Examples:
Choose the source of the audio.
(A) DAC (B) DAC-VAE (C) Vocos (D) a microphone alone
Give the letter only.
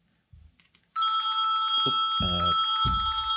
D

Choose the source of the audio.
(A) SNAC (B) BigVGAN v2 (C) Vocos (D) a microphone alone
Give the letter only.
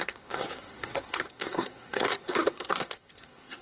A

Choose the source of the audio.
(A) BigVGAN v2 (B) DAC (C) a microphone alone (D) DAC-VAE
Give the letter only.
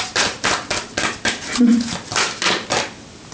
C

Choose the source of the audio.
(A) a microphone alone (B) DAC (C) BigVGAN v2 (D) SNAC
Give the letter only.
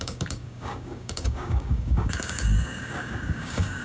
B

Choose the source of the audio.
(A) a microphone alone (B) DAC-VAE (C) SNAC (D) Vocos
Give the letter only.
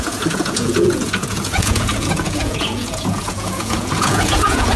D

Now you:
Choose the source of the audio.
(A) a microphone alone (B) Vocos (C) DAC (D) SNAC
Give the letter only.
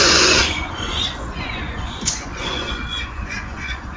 B